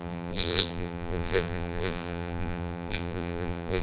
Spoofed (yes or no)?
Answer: yes